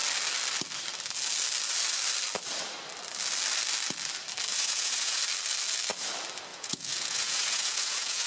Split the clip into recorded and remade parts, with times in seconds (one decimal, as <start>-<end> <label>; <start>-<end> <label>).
0.0-4.5 recorded; 4.5-5.2 remade; 5.2-6.5 recorded; 6.5-8.3 remade